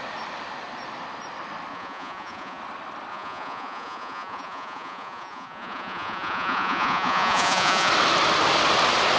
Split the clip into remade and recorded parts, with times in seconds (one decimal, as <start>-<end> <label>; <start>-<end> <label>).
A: 0.0-1.7 recorded; 1.7-2.6 remade; 2.6-3.1 recorded; 3.1-7.9 remade; 7.9-9.2 recorded